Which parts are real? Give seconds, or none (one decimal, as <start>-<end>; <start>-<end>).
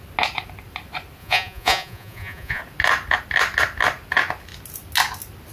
0.0-1.2; 2.6-5.5